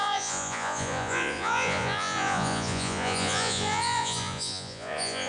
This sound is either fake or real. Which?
fake